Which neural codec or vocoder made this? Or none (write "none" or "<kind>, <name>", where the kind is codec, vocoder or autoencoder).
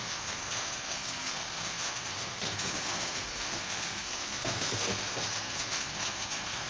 codec, SNAC